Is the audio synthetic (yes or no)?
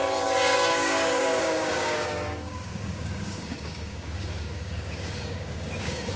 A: yes